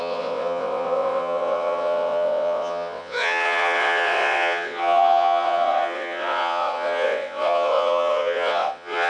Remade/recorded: remade